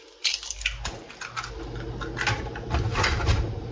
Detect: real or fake real